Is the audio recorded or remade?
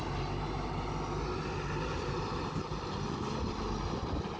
recorded